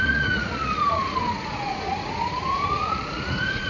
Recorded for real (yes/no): no